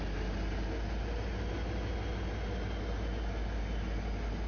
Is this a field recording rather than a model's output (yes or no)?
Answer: yes